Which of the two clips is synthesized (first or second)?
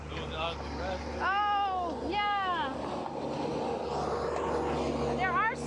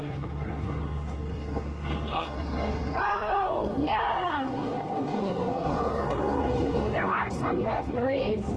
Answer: second